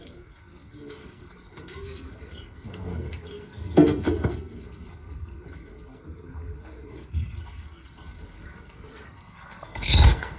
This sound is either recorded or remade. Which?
remade